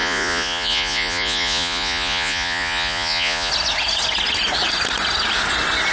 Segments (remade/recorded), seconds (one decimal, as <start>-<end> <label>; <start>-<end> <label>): 0.0-3.5 remade; 3.5-5.9 recorded

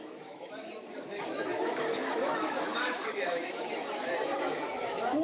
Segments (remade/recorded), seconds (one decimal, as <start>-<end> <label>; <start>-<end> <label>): 0.0-5.2 remade